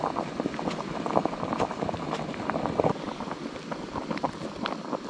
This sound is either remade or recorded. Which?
recorded